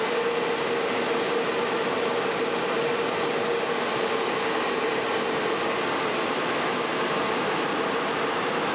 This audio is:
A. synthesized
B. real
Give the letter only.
B